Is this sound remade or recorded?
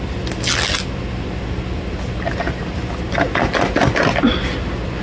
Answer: recorded